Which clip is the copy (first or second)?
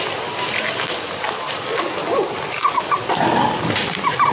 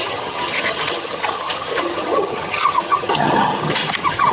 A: second